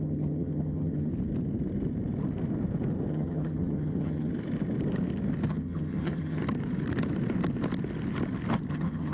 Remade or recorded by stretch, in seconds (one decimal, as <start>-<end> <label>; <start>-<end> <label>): 0.0-1.1 remade; 1.1-3.1 recorded; 3.1-4.3 remade; 4.3-5.5 recorded; 5.5-6.4 remade; 6.4-8.7 recorded; 8.7-9.1 remade